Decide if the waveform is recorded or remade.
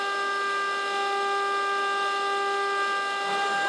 recorded